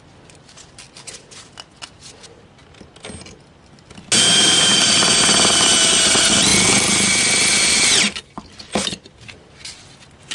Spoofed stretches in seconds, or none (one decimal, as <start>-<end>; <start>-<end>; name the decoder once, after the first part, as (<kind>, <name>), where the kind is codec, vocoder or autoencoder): none